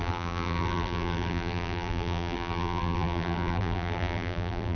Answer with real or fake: fake